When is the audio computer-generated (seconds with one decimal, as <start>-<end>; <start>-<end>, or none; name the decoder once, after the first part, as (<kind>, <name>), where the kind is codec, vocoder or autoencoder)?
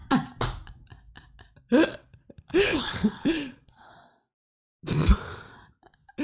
2.0-3.9 (codec, HILCodec)